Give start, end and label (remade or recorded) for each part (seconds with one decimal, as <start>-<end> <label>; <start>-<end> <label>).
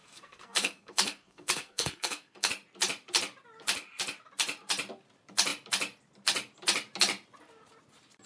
0.0-2.5 remade; 2.5-8.3 recorded